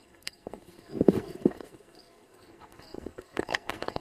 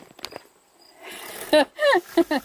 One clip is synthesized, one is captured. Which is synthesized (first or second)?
first